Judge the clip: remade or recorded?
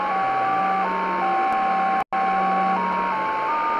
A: recorded